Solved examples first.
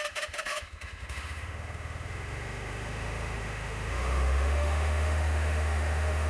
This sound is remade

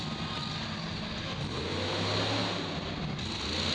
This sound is recorded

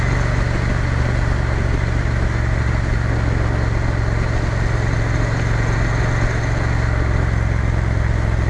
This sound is recorded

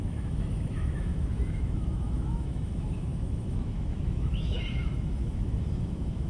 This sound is remade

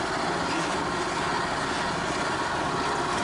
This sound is recorded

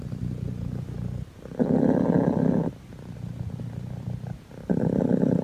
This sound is recorded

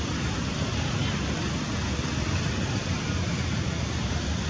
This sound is recorded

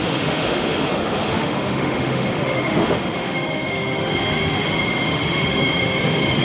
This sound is remade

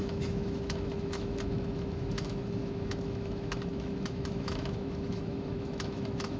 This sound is remade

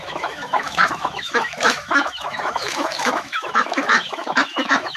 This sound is remade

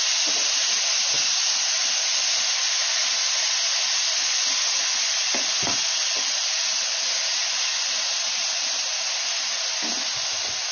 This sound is recorded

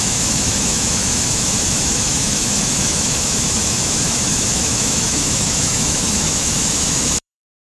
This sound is remade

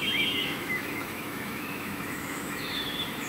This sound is remade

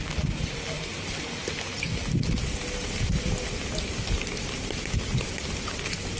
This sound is recorded